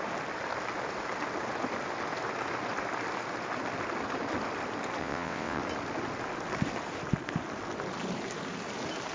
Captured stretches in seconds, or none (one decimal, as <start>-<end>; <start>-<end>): 0.0-5.0; 5.6-9.1